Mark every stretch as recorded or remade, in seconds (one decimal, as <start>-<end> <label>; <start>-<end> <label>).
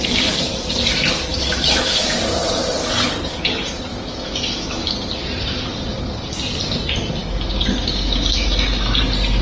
0.0-1.3 recorded; 1.3-2.1 remade; 2.1-3.9 recorded; 3.9-4.9 remade; 4.9-7.2 recorded; 7.2-9.0 remade; 9.0-9.4 recorded